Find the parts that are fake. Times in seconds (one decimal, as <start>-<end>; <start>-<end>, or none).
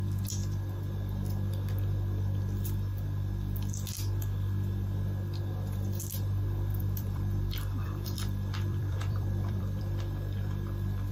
6.7-9.8